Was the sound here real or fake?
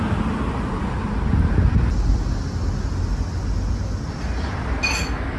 real